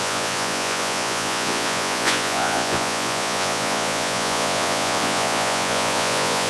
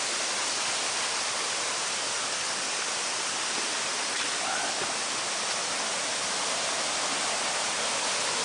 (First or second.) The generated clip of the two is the first